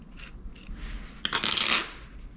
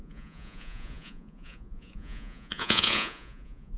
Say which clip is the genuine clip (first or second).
first